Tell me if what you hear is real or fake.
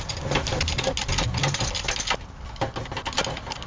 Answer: real